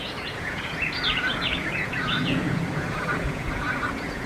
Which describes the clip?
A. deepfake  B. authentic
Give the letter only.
A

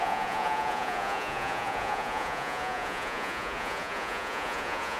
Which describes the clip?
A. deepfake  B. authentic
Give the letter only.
A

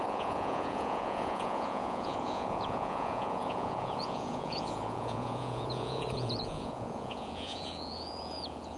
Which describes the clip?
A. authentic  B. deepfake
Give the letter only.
B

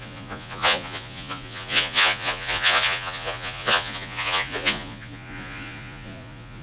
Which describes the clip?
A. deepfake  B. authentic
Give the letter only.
A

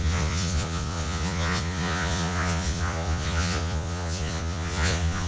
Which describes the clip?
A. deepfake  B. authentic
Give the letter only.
A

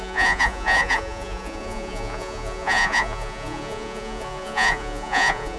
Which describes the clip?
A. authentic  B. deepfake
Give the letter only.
B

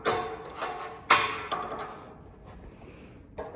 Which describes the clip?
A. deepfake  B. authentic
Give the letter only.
B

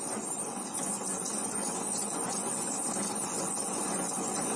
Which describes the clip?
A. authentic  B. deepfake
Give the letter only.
B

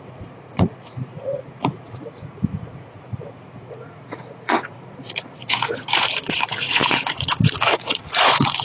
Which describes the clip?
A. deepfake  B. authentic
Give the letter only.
A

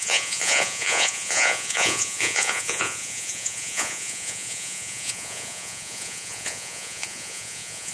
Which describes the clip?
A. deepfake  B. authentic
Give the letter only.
A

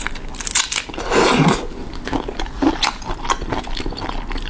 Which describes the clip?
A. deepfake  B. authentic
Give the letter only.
B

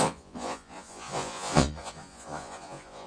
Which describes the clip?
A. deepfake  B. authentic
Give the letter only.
A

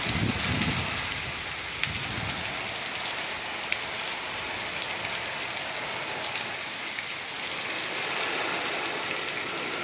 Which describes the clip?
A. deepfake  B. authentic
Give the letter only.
B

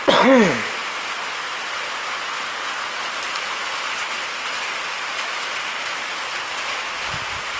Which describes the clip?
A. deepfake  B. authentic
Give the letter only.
B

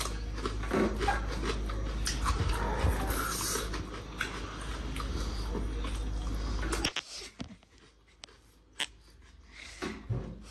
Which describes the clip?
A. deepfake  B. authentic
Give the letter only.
B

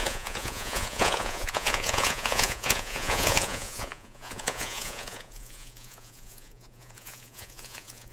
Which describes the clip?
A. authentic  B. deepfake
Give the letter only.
B